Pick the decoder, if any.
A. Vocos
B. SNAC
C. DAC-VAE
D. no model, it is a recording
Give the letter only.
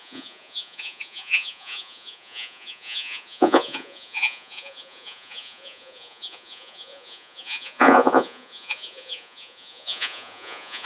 A